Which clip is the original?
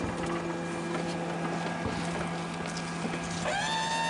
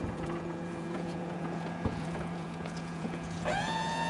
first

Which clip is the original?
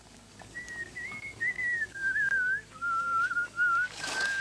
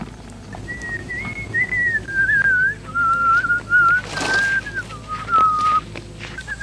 second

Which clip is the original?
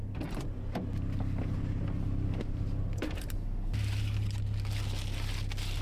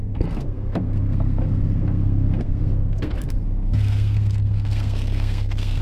first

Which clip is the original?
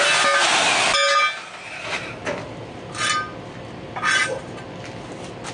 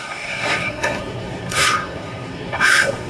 first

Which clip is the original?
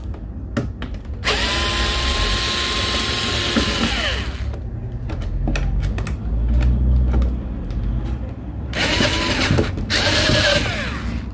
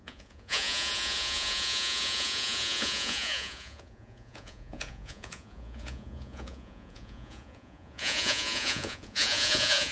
first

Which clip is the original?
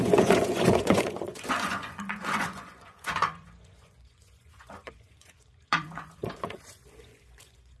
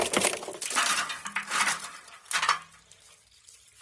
second